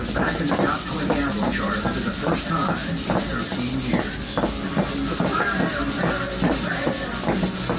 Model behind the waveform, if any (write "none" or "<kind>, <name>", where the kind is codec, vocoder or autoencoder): none